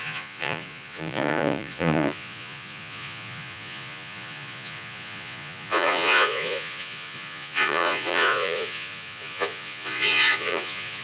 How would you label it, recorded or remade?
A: remade